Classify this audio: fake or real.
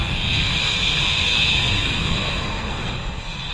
fake